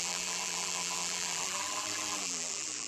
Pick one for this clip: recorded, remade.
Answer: remade